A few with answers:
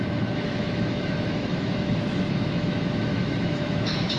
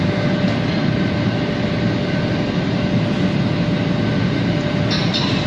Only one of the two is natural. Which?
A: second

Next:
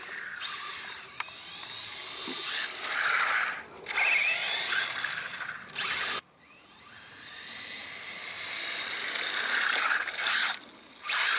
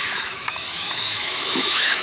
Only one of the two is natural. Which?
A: first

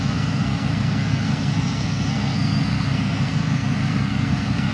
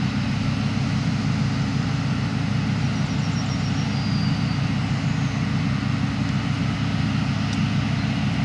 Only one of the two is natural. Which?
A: second